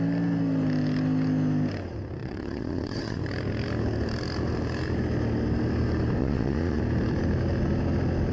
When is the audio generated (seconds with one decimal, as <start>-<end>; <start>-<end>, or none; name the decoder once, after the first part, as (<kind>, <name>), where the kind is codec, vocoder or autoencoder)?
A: 2.2-3.2 (vocoder, Vocos); 6.2-6.8